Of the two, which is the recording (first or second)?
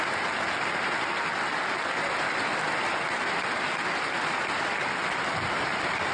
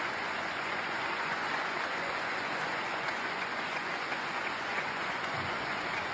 first